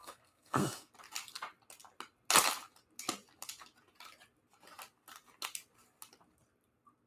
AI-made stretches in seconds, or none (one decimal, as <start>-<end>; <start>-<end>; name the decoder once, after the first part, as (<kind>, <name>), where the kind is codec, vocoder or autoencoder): 0.0-0.9 (codec, SNAC)